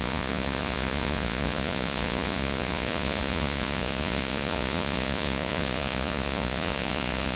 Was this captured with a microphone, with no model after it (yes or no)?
no